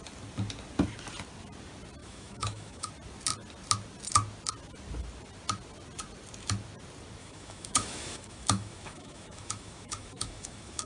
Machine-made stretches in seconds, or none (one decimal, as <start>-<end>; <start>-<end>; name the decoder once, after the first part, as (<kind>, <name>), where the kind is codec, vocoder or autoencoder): 2.0-2.9 (autoencoder, DAC-VAE); 7.2-10.9